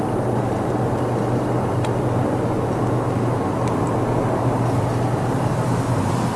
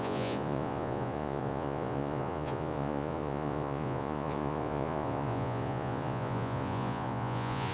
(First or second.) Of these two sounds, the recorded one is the first